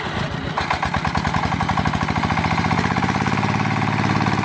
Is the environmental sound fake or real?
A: real